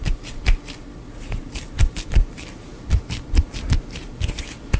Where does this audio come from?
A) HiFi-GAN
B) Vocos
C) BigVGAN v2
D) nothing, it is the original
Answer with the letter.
D